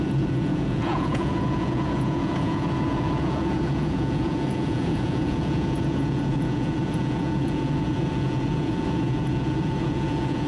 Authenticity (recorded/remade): remade